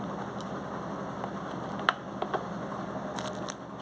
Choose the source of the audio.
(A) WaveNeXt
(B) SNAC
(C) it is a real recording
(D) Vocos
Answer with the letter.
C